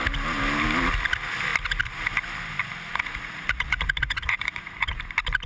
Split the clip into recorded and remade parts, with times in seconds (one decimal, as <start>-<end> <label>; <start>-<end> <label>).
0.0-2.9 recorded; 2.9-5.0 remade; 5.0-5.5 recorded